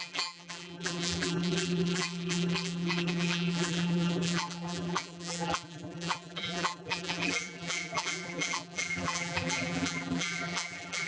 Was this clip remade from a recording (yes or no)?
yes